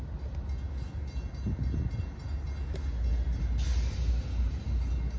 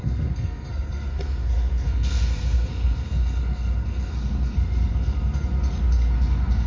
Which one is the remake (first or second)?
second